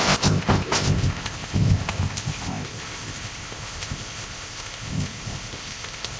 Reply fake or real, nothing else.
fake